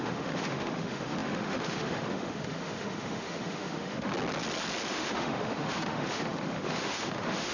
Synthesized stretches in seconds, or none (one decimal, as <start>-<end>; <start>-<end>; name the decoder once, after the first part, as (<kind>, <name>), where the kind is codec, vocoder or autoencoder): 0.0-4.1 (autoencoder, DAC-VAE); 4.9-7.5